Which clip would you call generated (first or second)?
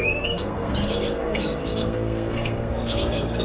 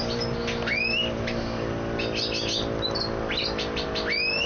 first